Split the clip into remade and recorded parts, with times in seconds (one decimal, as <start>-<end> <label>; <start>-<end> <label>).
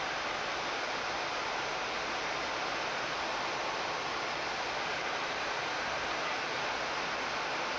0.0-5.0 recorded; 5.0-6.7 remade; 6.7-7.8 recorded